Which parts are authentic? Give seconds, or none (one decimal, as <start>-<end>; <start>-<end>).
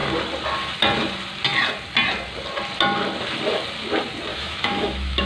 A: 0.0-4.3